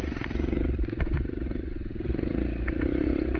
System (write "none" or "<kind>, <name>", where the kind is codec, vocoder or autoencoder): vocoder, Vocos